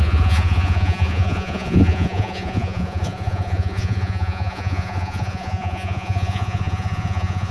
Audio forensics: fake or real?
fake